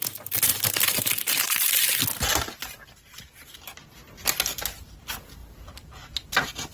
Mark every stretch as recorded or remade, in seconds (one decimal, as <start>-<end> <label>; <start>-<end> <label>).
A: 0.0-0.5 recorded; 0.5-1.7 remade; 1.7-5.4 recorded; 5.4-6.7 remade

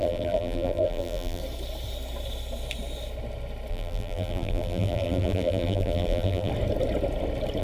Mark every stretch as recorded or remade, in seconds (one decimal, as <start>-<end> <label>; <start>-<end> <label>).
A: 0.0-1.4 remade; 1.4-3.7 recorded; 3.7-6.5 remade; 6.5-7.6 recorded

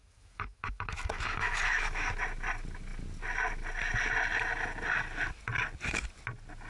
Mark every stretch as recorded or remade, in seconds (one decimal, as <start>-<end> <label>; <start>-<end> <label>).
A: 0.0-2.1 remade; 2.1-6.7 recorded